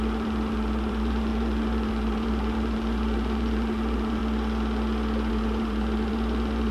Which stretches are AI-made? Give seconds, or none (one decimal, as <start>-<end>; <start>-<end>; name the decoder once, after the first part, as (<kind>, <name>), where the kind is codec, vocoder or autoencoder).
0.0-4.2 (vocoder, BigVGAN v2); 5.3-6.7